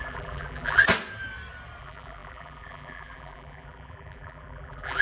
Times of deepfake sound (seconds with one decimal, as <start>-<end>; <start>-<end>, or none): 0.0-0.8; 1.8-5.0